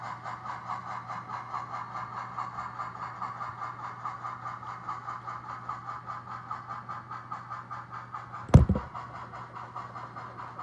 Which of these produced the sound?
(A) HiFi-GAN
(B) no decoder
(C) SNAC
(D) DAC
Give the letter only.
B